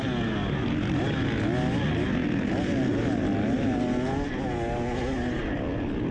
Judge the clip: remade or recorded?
recorded